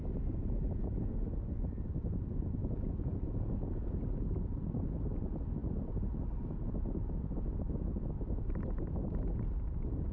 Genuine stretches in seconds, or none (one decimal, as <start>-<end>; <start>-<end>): 0.0-2.6; 3.8-10.1